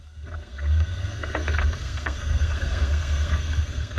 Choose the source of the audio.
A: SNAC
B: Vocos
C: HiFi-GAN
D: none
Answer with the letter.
A